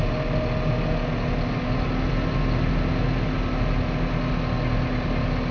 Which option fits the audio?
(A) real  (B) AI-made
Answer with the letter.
A